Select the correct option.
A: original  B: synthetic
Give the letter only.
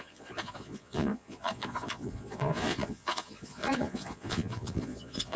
B